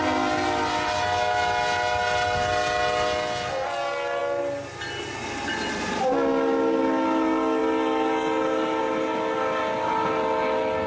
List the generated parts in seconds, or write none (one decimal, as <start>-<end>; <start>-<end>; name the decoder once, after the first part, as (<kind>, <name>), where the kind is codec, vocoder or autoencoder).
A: none